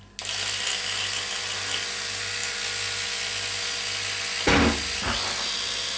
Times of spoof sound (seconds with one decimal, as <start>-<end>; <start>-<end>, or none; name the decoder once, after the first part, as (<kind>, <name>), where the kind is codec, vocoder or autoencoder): none